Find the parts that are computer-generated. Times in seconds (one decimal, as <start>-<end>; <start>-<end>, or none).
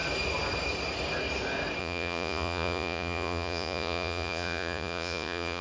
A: 1.8-5.6